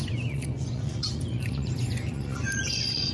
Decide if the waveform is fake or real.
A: fake